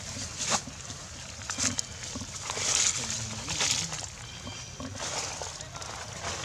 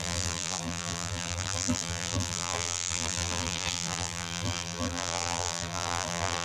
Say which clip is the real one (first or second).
first